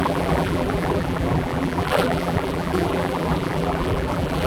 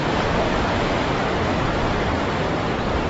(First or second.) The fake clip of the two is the first